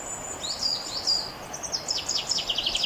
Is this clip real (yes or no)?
yes